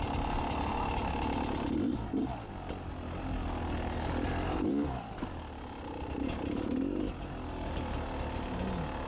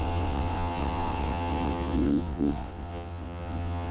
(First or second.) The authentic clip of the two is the first